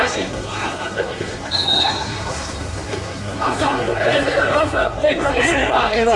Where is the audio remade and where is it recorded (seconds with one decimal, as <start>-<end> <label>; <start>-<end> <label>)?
0.0-6.2 remade